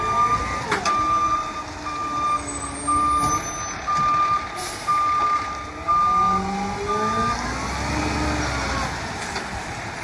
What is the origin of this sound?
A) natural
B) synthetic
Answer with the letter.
A